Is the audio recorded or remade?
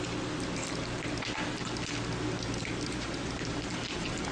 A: recorded